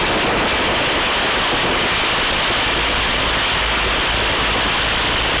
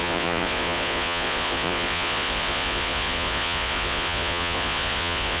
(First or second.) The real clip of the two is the first